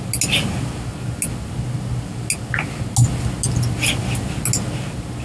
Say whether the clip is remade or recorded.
recorded